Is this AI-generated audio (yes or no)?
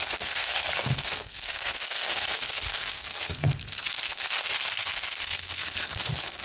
yes